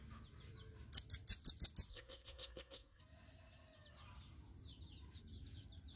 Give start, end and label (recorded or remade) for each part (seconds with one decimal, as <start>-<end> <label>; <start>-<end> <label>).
0.0-1.9 recorded; 1.9-3.0 remade; 3.0-6.0 recorded